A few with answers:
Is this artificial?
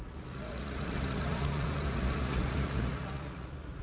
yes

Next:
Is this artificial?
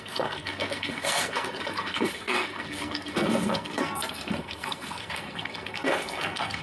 yes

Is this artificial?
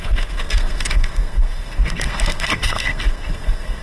yes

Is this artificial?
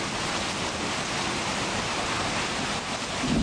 no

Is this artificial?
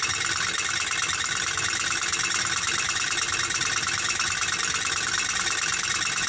no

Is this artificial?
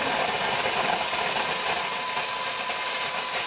no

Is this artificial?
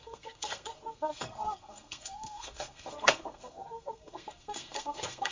yes